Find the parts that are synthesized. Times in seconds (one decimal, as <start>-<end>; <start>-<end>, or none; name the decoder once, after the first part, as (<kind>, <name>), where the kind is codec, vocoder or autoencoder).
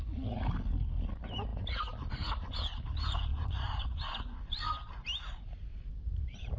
3.3-4.7 (vocoder, Vocos)